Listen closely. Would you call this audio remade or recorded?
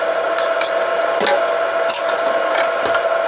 recorded